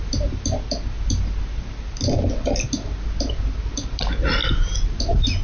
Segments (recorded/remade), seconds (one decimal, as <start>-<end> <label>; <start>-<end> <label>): 0.0-5.4 recorded